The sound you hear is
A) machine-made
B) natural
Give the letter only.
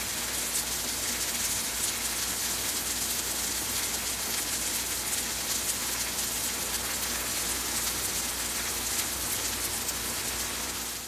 B